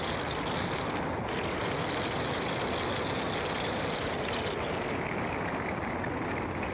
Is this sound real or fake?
real